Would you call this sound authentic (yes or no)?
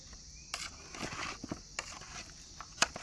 yes